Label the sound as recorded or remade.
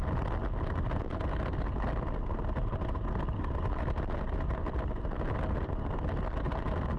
recorded